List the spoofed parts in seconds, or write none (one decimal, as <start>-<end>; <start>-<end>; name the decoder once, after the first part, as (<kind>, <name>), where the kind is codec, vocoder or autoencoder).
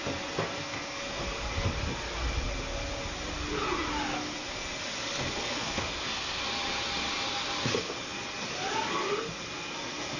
0.6-1.2 (codec, SNAC); 5.1-6.4